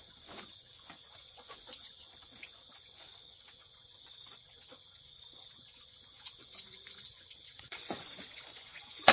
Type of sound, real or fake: fake